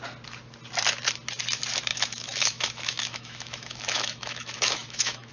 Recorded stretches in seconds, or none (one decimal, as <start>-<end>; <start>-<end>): 0.0-1.9

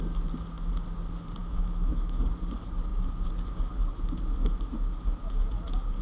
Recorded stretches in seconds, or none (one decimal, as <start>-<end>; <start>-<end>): 0.0-1.4; 2.2-6.0